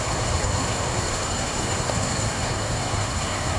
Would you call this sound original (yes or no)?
no